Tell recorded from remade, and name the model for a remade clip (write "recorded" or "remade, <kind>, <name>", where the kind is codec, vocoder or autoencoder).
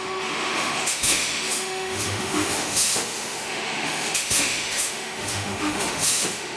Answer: remade, autoencoder, DAC-VAE